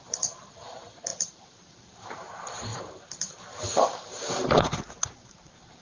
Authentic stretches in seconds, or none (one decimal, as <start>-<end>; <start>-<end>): none